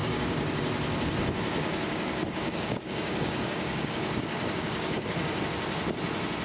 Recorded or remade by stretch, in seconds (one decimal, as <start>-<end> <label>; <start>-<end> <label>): 0.0-0.6 remade; 0.6-1.6 recorded; 1.6-5.4 remade; 5.4-6.4 recorded